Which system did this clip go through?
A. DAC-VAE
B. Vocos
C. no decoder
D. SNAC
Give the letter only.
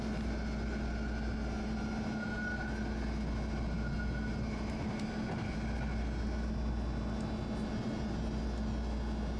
C